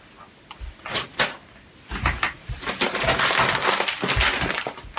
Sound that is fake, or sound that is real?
real